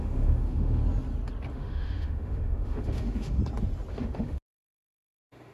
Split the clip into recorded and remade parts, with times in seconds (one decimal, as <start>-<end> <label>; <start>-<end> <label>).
0.0-0.8 remade; 0.8-1.5 recorded; 1.5-3.4 remade; 3.4-3.9 recorded; 3.9-5.5 remade